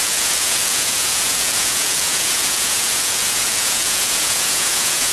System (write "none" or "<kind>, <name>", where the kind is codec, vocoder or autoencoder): vocoder, Vocos